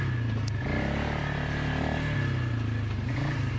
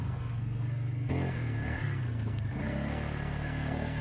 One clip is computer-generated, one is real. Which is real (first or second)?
first